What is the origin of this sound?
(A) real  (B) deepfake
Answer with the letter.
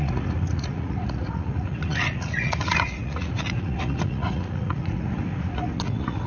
B